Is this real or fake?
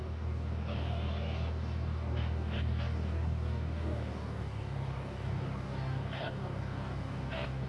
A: fake